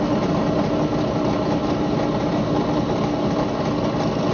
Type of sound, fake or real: real